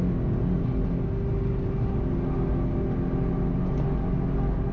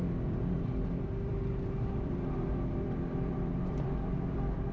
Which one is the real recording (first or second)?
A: first